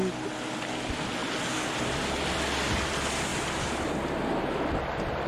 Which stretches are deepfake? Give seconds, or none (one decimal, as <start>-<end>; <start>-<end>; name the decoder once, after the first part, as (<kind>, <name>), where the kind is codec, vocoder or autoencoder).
none